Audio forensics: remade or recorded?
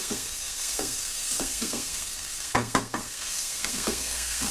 remade